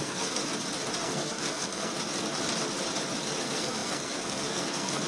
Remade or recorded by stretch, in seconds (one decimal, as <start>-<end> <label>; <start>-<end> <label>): 0.0-0.4 remade; 0.4-1.0 recorded; 1.0-1.9 remade; 1.9-3.4 recorded; 3.4-5.1 remade